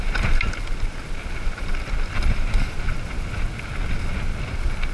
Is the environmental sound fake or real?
real